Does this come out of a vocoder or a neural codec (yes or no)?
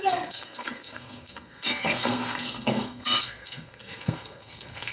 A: yes